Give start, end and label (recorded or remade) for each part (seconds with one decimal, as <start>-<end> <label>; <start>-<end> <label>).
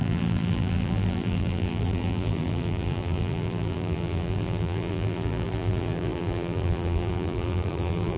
0.0-8.2 remade